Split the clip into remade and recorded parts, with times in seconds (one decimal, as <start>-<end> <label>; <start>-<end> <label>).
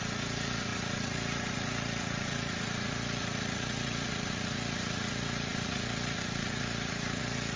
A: 0.0-7.6 remade